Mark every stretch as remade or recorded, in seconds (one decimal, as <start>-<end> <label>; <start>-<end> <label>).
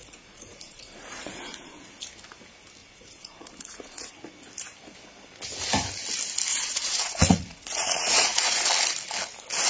0.0-1.8 remade; 1.8-2.8 recorded; 2.8-4.1 remade; 4.1-6.5 recorded; 6.5-8.7 remade; 8.7-9.7 recorded